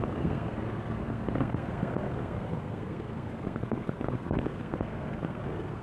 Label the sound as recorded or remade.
remade